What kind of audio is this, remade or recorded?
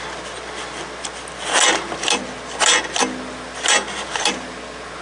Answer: recorded